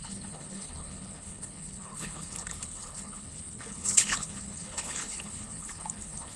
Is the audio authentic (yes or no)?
no